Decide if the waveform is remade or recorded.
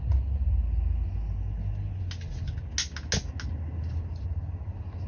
recorded